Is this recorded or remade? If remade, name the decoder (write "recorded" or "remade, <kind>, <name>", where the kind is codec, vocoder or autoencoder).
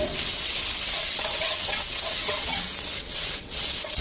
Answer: remade, vocoder, WaveNeXt